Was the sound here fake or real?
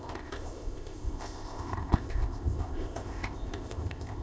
fake